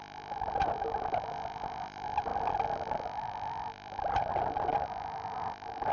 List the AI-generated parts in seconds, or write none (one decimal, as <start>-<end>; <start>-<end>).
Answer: none